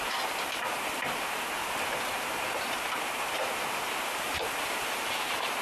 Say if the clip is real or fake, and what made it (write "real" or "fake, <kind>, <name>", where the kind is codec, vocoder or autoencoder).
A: fake, vocoder, BigVGAN v2